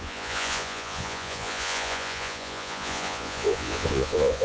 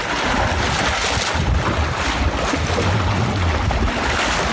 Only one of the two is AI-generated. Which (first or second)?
first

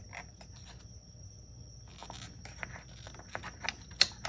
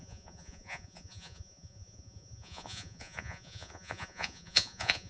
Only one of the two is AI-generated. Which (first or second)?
second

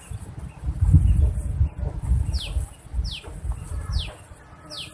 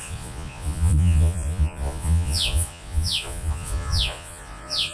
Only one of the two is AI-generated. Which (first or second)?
second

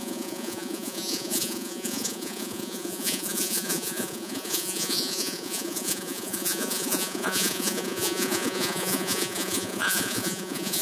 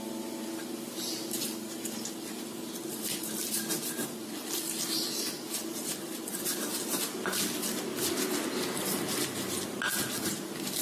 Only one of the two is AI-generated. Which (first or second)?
first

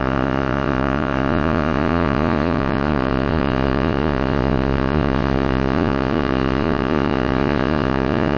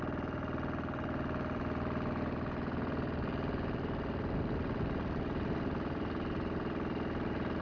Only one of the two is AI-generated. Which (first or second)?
first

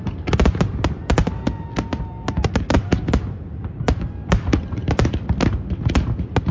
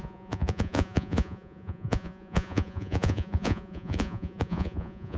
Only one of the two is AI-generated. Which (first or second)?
second